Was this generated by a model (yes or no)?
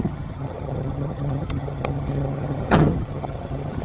yes